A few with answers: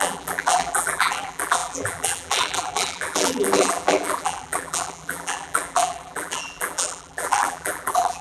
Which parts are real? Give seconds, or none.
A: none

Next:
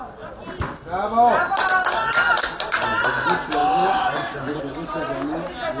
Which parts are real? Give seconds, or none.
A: 0.0-5.8